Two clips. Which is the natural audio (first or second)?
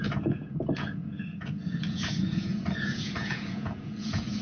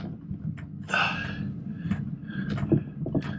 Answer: second